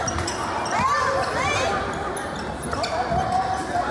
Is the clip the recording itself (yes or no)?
yes